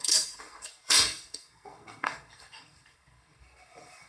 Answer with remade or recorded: remade